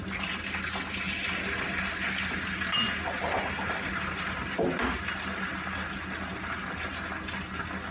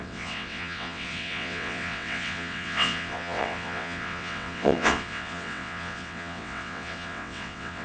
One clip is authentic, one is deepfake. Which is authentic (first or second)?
first